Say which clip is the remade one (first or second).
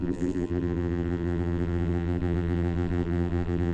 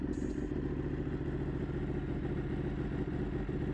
first